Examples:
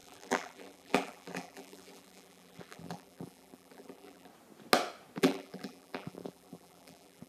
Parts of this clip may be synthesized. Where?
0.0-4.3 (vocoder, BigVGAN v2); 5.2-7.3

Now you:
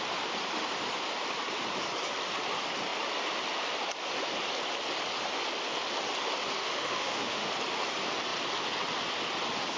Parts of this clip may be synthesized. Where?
6.6-7.5 (autoencoder, DAC-VAE)

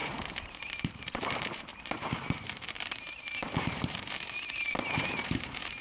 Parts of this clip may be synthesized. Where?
0.0-5.8 (vocoder, BigVGAN v2)

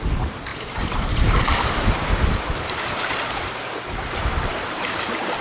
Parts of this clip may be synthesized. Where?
0.5-3.4 (vocoder, BigVGAN v2); 4.2-4.9

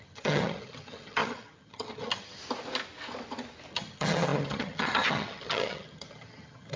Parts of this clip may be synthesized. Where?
0.0-2.4 (vocoder, HiFi-GAN); 3.7-6.8

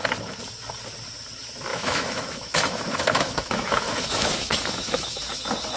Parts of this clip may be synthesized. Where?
1.7-5.2 (autoencoder, DAC-VAE)